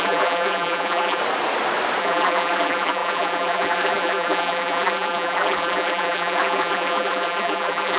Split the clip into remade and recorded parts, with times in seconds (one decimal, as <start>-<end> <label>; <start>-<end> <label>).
0.0-1.2 remade; 1.2-2.0 recorded; 2.0-8.0 remade